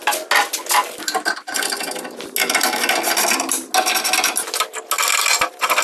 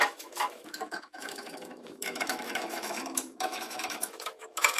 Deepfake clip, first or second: second